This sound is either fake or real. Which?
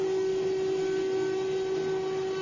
real